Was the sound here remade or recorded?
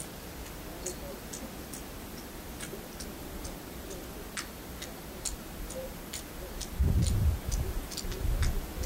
remade